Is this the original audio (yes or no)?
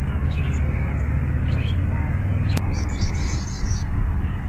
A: no